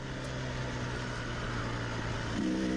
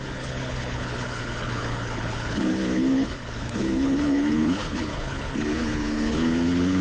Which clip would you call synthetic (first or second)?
second